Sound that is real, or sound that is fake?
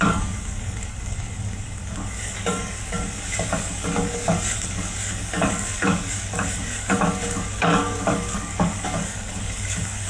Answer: fake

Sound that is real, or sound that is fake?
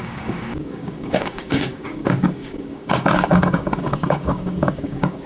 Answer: fake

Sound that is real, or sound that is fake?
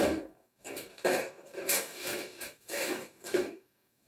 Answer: fake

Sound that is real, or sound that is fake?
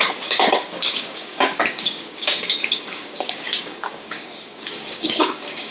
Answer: fake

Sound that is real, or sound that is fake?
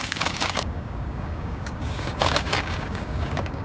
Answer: fake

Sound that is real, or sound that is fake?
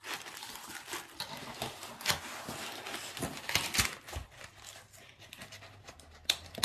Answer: real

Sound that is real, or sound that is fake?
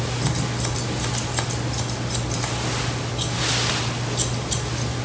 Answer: real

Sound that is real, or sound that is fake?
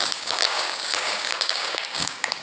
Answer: fake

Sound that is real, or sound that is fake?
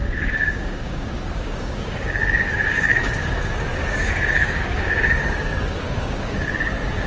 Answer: fake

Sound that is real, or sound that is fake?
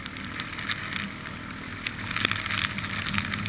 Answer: real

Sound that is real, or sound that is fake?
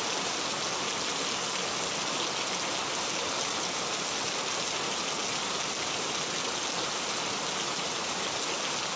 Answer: real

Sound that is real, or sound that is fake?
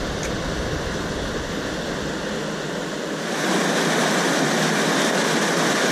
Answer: real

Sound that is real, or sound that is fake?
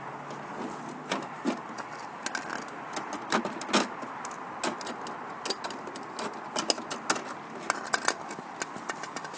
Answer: real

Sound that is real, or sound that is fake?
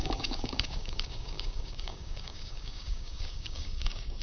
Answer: fake